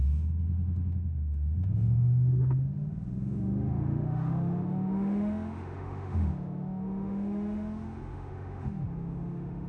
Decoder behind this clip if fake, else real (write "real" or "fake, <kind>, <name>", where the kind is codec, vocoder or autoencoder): fake, autoencoder, DAC-VAE